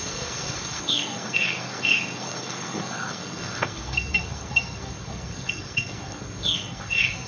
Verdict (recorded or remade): remade